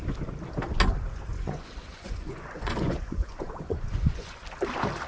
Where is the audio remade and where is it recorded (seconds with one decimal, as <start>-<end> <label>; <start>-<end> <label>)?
0.0-1.3 recorded; 1.3-4.4 remade; 4.4-5.1 recorded